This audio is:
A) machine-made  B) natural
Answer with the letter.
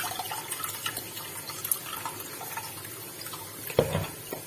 B